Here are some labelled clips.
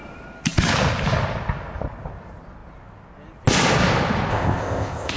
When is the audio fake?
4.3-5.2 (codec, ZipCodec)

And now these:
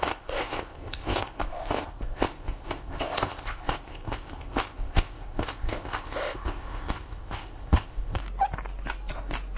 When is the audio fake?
0.0-8.2 (codec, ZipCodec)

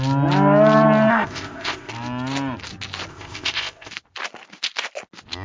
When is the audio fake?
1.1-1.9 (codec, ZipCodec); 3.1-3.9

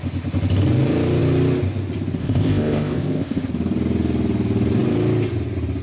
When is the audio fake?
2.2-3.5 (codec, ZipCodec)

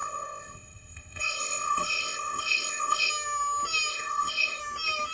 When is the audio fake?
0.0-3.1 (codec, ZipCodec); 3.9-4.6

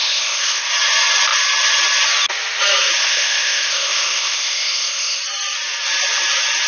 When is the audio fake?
0.0-0.7 (codec, ZipCodec); 3.0-5.2

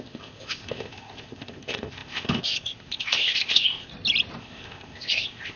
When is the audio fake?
0.0-3.9 (codec, ZipCodec); 4.4-5.6